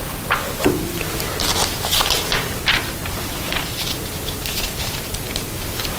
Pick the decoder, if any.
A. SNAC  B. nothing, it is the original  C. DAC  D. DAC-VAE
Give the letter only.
B